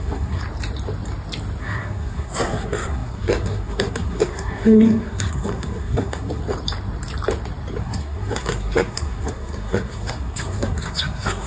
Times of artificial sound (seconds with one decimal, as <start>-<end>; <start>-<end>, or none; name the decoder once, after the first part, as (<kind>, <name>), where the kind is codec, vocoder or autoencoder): 0.0-0.4 (codec, SNAC); 1.6-6.4; 7.8-11.5